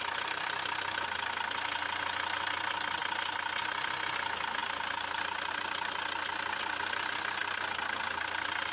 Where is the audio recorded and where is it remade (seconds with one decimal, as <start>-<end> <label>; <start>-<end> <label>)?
0.0-8.7 recorded